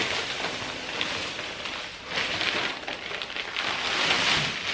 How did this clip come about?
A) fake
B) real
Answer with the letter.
B